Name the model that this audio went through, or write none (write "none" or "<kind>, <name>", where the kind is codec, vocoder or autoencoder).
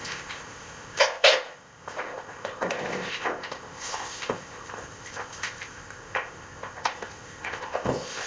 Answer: codec, ZipCodec